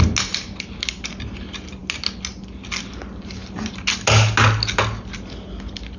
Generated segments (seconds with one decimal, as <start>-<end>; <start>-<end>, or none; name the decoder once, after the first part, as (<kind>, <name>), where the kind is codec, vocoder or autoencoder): none